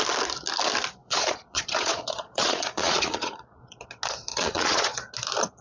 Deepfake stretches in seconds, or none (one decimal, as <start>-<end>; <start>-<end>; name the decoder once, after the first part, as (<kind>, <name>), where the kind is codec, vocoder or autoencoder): 1.0-3.8 (vocoder, Vocos); 4.3-5.1